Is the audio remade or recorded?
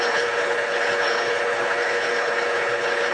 remade